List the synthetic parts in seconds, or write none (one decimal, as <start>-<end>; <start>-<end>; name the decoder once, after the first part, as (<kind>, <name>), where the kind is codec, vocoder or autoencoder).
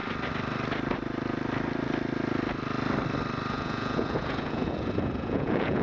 3.5-5.8 (vocoder, Vocos)